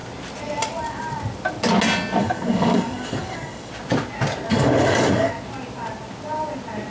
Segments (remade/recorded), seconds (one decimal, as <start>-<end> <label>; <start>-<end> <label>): 0.0-2.2 recorded; 2.2-3.7 remade; 3.7-4.5 recorded; 4.5-5.3 remade; 5.3-6.9 recorded